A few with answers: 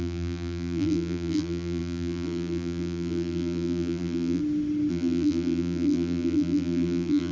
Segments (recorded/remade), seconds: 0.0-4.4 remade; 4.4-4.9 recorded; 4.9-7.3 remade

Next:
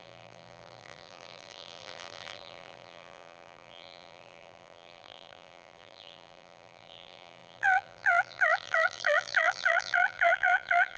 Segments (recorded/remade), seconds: 0.0-11.0 remade

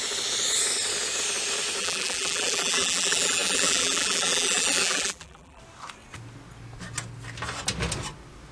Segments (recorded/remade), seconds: 0.0-1.8 recorded; 1.8-5.6 remade; 5.6-8.5 recorded

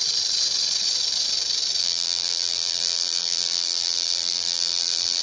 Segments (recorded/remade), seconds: 0.0-1.8 recorded; 1.8-5.2 remade

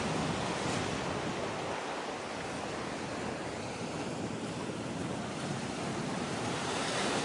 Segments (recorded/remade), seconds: 0.0-5.0 recorded; 5.0-7.2 remade

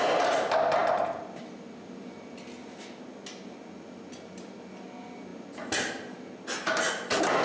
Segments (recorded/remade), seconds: 0.0-7.4 recorded

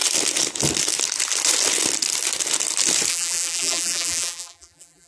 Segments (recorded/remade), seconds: 0.0-3.1 recorded; 3.1-5.1 remade

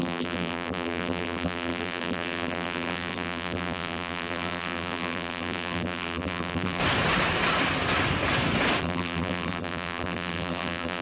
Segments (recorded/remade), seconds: 0.0-6.8 remade; 6.8-8.8 recorded; 8.8-11.0 remade